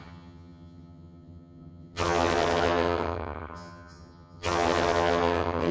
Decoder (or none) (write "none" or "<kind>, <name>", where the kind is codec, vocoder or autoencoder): vocoder, HiFi-GAN